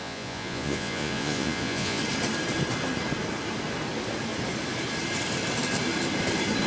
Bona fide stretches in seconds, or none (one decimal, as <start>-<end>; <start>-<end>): 2.0-6.7

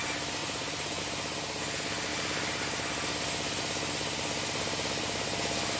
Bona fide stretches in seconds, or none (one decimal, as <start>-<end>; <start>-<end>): 0.0-0.4; 1.0-5.8